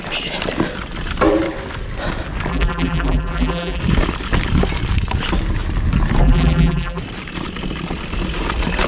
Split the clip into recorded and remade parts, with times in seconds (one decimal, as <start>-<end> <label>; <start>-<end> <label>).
0.0-2.5 recorded; 2.5-3.8 remade; 3.8-6.2 recorded; 6.2-7.0 remade; 7.0-8.9 recorded